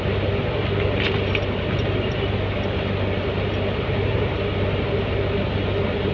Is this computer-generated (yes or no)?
no